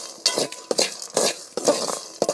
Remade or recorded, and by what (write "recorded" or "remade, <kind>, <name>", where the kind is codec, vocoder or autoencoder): recorded